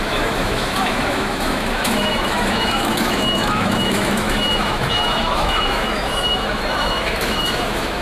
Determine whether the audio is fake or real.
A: fake